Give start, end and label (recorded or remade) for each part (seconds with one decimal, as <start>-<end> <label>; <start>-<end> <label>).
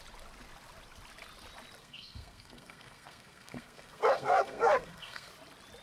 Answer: 0.0-1.8 recorded; 1.8-5.3 remade; 5.3-5.8 recorded